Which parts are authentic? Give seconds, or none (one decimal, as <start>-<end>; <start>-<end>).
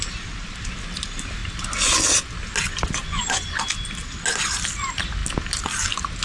0.0-3.0; 3.6-6.2